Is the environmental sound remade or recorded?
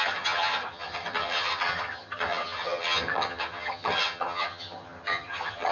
remade